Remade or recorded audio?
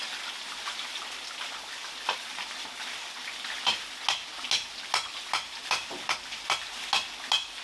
recorded